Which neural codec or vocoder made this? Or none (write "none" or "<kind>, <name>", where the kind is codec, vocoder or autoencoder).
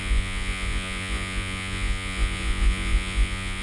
vocoder, Vocos